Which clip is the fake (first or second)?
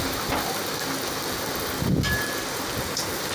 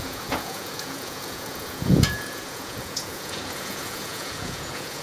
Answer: second